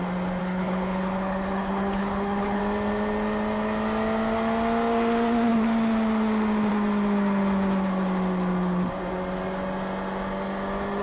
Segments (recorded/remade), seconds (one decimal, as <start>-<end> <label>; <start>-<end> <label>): 0.0-0.4 recorded; 0.4-2.6 remade; 2.6-11.0 recorded